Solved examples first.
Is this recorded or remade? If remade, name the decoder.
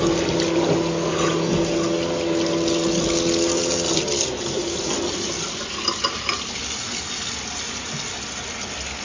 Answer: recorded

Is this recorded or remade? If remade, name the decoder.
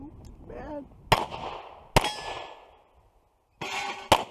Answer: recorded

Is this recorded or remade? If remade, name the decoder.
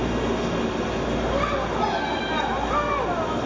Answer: recorded